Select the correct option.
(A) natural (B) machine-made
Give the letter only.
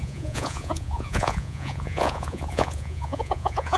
B